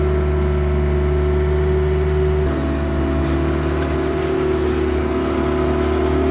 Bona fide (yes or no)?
yes